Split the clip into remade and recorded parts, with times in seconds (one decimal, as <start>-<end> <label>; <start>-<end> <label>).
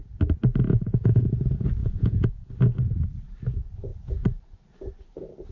0.0-0.7 recorded; 0.7-1.3 remade; 1.3-1.8 recorded; 1.8-2.5 remade; 2.5-5.5 recorded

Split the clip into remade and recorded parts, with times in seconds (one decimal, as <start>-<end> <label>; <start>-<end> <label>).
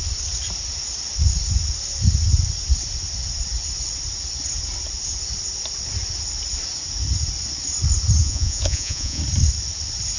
0.0-8.2 recorded; 8.2-9.2 remade; 9.2-10.2 recorded